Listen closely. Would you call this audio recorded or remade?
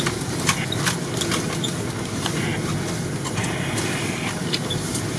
recorded